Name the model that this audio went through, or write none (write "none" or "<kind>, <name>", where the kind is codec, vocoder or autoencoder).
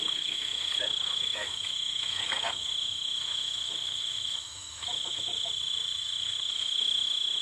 autoencoder, DAC-VAE